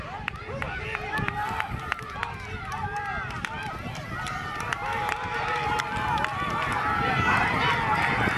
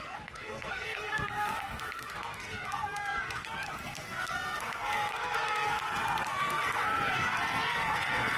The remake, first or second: second